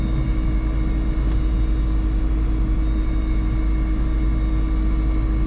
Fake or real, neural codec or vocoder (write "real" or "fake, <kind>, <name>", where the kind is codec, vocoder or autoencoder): real